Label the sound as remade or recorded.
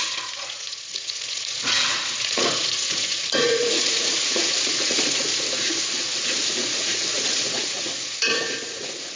remade